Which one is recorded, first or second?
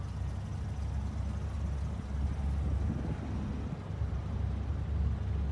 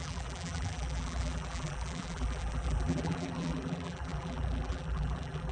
first